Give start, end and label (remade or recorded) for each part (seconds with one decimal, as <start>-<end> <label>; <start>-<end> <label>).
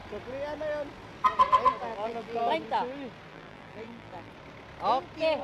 0.0-1.9 recorded; 1.9-2.4 remade; 2.4-3.3 recorded; 3.3-4.3 remade; 4.3-5.4 recorded